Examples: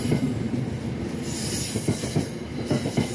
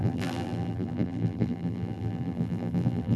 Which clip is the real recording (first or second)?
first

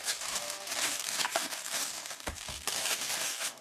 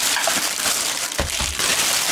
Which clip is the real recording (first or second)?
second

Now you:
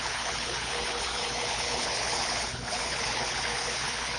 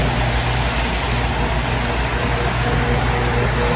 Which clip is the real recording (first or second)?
second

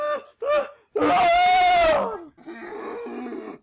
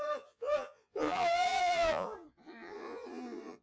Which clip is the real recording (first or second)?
first